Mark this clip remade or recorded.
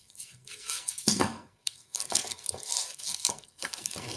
remade